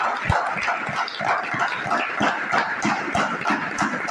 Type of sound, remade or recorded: recorded